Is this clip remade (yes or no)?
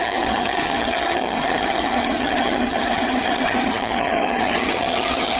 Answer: yes